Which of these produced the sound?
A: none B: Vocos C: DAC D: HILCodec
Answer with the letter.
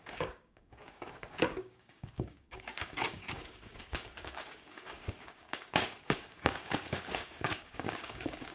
C